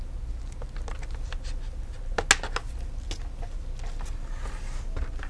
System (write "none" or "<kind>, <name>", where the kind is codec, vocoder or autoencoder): none